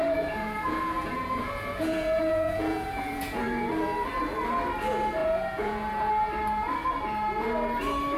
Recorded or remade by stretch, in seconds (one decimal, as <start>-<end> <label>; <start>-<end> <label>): 0.0-3.7 remade; 3.7-5.2 recorded; 5.2-6.1 remade; 6.1-8.2 recorded